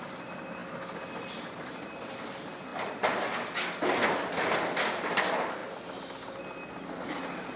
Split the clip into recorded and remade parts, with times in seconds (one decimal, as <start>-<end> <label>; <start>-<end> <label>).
0.0-7.6 recorded